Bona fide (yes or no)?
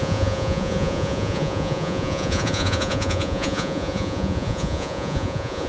no